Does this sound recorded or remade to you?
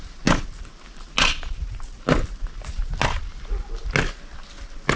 recorded